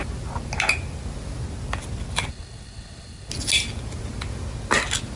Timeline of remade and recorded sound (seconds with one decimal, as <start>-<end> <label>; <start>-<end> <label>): 0.0-2.3 recorded; 2.3-3.3 remade; 3.3-5.2 recorded